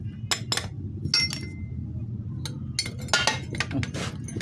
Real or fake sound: real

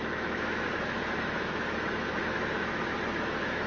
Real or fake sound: fake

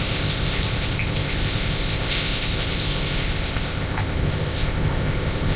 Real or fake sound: fake